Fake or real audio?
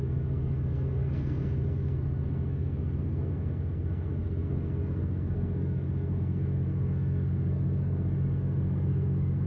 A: fake